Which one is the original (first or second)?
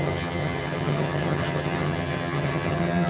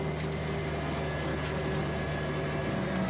second